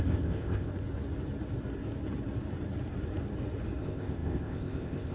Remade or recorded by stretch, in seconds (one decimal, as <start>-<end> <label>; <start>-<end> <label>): 0.0-0.7 remade; 0.7-3.8 recorded; 3.8-5.1 remade